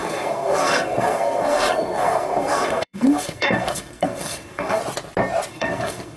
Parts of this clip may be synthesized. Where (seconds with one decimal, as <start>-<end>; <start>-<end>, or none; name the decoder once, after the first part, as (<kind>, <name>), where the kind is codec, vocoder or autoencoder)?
0.0-4.8 (codec, SNAC); 5.5-6.2